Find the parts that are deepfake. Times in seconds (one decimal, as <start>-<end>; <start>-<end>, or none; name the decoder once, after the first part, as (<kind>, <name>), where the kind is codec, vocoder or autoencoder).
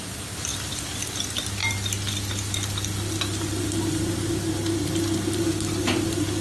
none